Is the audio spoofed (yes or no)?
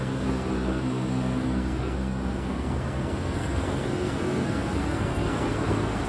yes